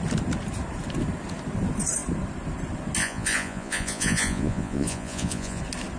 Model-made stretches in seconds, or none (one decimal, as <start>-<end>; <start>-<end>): 3.0-5.6